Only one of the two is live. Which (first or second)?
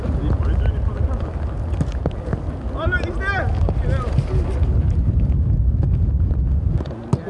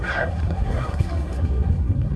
first